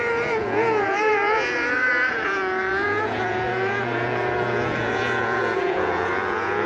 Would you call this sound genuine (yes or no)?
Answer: no